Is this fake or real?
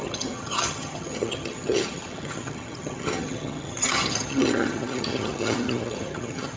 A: fake